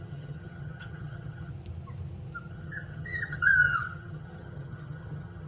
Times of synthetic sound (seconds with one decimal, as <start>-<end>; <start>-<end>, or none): 0.0-1.5; 2.5-5.5